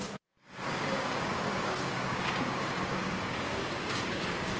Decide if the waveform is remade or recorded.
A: remade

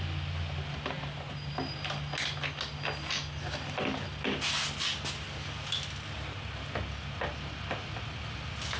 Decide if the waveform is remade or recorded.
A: recorded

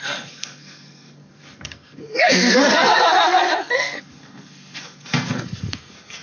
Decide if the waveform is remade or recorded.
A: remade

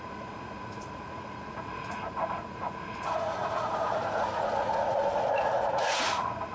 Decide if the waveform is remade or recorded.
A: remade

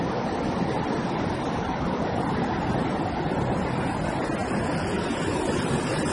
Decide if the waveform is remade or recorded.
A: recorded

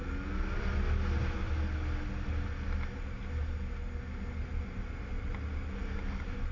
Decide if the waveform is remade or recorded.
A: recorded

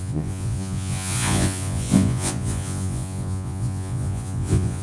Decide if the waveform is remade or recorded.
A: remade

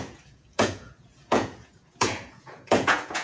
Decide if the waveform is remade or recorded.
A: remade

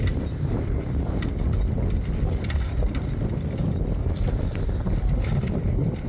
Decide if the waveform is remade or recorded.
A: recorded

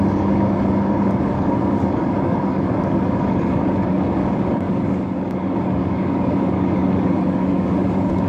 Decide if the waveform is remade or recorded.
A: remade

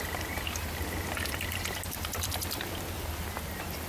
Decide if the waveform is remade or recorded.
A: recorded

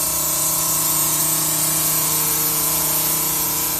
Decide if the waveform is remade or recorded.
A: remade